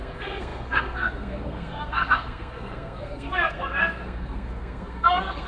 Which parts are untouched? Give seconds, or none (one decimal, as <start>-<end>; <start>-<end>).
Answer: none